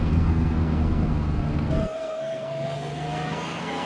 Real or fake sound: fake